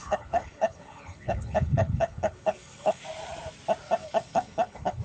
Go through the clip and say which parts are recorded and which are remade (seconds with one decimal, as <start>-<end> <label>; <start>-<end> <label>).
0.0-3.0 remade; 3.0-4.0 recorded; 4.0-5.0 remade